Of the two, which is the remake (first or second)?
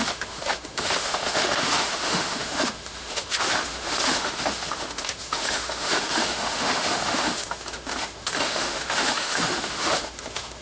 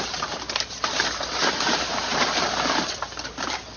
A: first